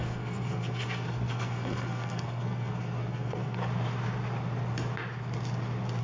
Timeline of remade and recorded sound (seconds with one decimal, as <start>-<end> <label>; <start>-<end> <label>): 0.0-3.6 remade; 3.6-6.0 recorded